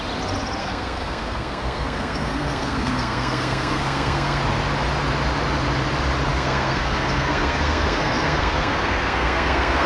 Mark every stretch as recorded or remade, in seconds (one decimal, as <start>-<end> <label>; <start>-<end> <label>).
0.0-0.6 recorded; 0.6-4.4 remade; 4.4-6.3 recorded; 6.3-9.9 remade